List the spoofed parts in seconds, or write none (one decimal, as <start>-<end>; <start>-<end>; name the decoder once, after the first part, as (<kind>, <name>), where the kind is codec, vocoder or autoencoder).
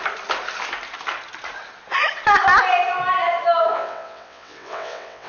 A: 3.7-5.3 (vocoder, WaveNeXt)